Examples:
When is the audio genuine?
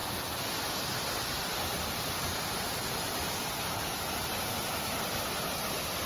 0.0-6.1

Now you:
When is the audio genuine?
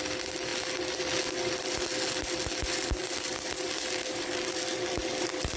0.0-3.0; 4.7-5.6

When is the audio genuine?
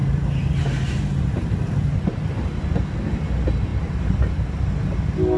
2.6-3.7; 4.6-5.4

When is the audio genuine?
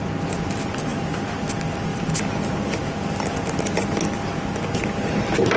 0.0-0.9; 1.4-5.6